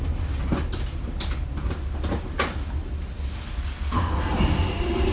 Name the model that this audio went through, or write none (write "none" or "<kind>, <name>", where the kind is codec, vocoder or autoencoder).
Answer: none